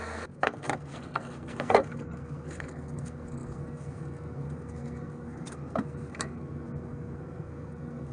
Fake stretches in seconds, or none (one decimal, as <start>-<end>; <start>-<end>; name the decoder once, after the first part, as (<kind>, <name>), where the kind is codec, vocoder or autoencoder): 0.0-8.1 (codec, SNAC)